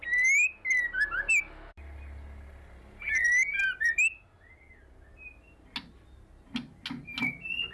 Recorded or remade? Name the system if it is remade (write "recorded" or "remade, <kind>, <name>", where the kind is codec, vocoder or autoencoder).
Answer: recorded